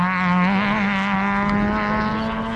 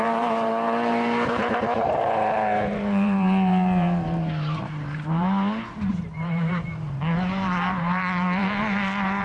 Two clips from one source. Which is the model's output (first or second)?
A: second